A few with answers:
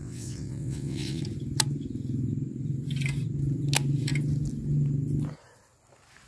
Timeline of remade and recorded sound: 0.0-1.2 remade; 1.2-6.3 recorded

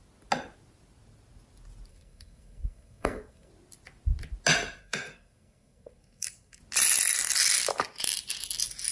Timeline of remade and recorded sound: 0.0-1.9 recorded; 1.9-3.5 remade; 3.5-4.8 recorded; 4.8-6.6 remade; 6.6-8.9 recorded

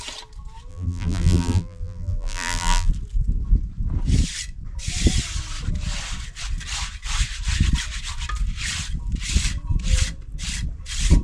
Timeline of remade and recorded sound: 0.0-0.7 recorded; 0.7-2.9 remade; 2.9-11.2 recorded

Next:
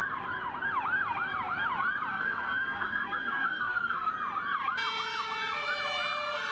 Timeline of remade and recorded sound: 0.0-2.1 recorded; 2.1-4.1 remade; 4.1-6.5 recorded